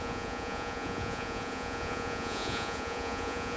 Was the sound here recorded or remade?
remade